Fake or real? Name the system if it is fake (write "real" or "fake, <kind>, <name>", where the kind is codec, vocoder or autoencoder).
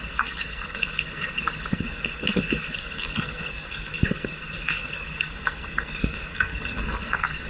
fake, codec, SNAC